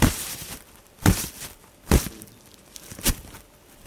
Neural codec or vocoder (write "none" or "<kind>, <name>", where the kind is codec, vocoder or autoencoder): vocoder, BigVGAN v2